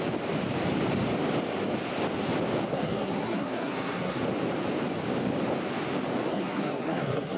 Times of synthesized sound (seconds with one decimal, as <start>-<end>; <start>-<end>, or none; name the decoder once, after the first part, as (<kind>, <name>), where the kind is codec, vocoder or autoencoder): 2.7-4.2 (codec, SNAC); 6.3-7.4